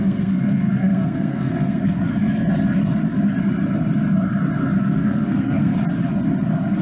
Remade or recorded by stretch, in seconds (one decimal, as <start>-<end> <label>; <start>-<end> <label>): 0.0-2.1 remade; 2.1-4.8 recorded; 4.8-5.7 remade; 5.7-6.8 recorded